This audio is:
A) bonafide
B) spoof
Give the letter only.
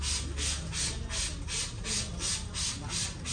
A